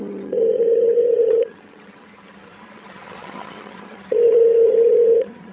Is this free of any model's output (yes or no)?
no